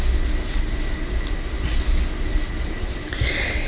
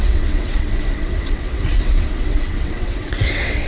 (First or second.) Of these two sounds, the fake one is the second